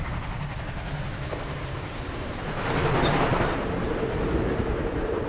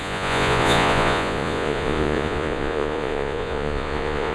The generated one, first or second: second